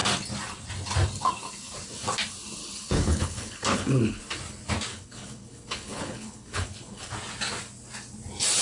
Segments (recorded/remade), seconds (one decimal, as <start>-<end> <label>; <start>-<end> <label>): 0.0-2.6 recorded; 2.6-4.2 remade; 4.2-4.9 recorded; 4.9-7.1 remade; 7.1-8.6 recorded